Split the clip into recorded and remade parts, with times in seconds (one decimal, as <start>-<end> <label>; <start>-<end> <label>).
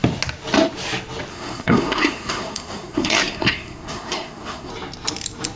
0.0-1.3 recorded; 1.3-4.7 remade; 4.7-5.6 recorded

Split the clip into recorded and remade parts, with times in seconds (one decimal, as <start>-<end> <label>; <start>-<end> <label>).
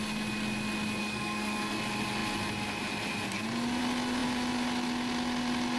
0.0-1.0 recorded; 1.0-1.8 remade; 1.8-5.8 recorded